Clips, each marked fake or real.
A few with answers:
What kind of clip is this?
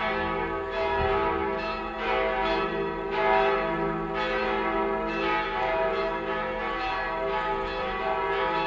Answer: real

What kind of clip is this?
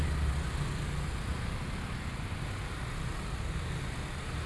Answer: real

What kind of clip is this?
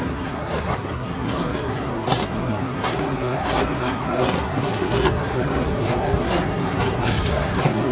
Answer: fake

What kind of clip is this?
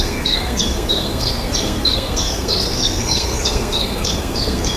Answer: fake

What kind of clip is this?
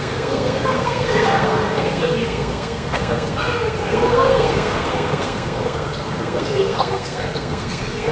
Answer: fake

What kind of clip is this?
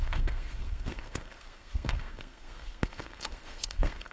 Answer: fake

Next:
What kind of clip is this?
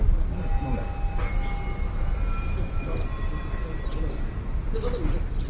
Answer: real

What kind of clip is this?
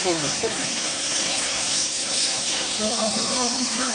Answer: fake